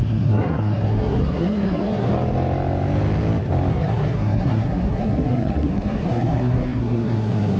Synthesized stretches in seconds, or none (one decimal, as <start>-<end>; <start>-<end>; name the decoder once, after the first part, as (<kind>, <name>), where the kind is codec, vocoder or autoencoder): 0.0-2.1 (codec, SNAC); 3.7-7.6